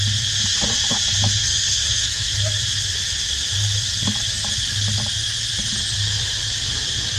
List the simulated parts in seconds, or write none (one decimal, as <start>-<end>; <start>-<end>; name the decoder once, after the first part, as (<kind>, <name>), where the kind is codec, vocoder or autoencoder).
1.4-2.3 (codec, SNAC)